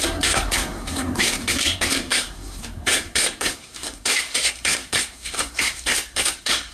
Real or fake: fake